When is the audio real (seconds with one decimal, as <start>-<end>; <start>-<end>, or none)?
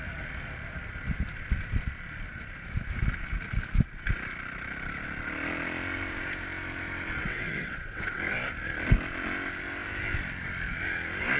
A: 0.0-7.2; 8.2-11.4